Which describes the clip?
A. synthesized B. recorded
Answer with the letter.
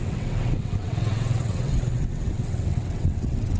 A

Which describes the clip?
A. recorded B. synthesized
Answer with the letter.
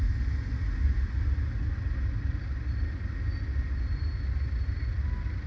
A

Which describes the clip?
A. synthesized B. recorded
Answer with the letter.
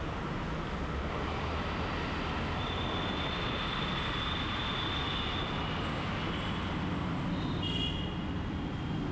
B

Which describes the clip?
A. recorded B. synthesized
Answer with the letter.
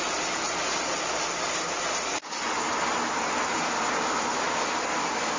A